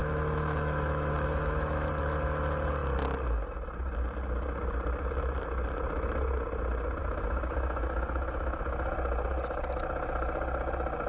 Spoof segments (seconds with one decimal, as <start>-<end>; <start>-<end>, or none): 0.0-1.9; 7.0-8.6